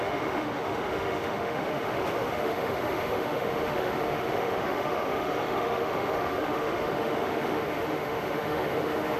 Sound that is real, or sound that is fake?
fake